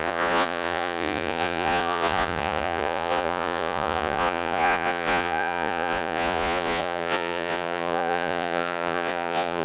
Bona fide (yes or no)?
no